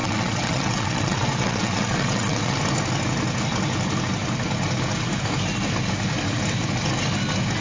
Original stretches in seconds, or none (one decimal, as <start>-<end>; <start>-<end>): 2.6-7.6